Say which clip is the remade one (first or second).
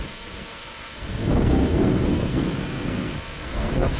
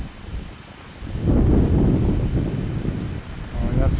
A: first